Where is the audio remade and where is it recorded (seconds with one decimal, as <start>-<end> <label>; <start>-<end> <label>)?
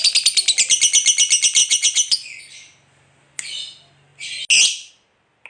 0.0-1.6 recorded; 1.6-2.4 remade; 2.4-5.5 recorded